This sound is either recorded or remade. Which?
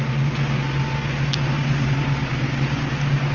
recorded